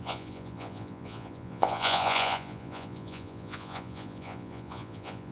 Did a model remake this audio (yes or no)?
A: yes